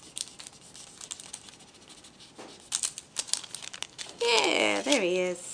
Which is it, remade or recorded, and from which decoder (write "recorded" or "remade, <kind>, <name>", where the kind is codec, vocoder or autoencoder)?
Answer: recorded